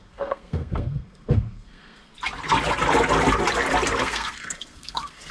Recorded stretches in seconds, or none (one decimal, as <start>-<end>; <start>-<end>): 2.1-4.0